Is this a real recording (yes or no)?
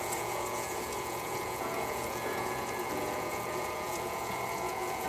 no